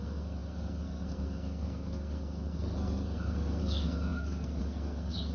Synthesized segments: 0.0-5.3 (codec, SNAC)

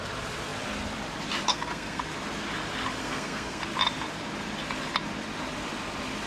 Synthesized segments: 1.5-2.0 (codec, SNAC); 3.0-3.6

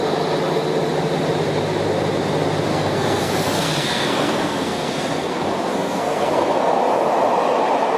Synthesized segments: 2.7-6.8 (codec, SNAC)

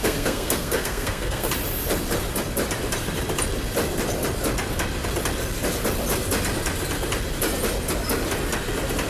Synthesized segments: 0.0-1.5 (codec, SNAC)

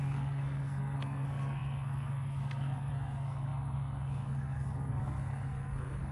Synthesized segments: 0.0-6.1 (codec, SNAC)

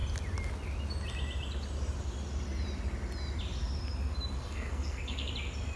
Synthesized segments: 4.4-5.3 (codec, SNAC)

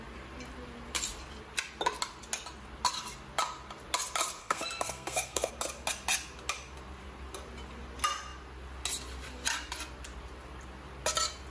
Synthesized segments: 4.4-5.5 (codec, SNAC)